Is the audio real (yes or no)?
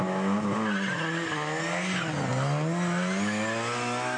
yes